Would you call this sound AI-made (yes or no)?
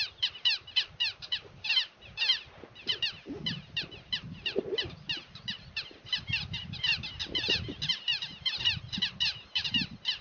yes